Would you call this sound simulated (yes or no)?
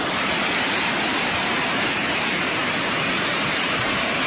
yes